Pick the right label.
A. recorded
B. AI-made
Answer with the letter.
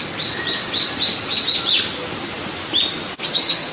A